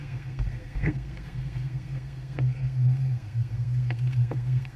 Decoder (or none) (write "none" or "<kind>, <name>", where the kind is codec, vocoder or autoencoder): codec, SNAC